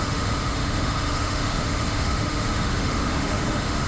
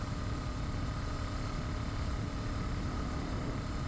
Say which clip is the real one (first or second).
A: second